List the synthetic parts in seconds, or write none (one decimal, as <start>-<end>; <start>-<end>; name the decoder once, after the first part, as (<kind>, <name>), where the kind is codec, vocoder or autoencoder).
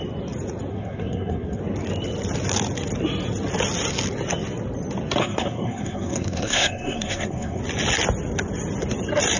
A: 0.7-1.6 (codec, SNAC); 5.2-7.6